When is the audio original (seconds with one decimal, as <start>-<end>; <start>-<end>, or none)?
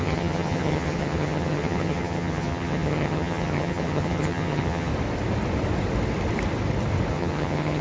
4.9-7.1